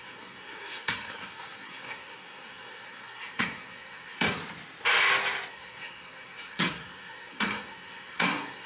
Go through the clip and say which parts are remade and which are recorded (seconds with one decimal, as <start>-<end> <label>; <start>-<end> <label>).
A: 0.0-4.4 remade; 4.4-5.5 recorded; 5.5-8.7 remade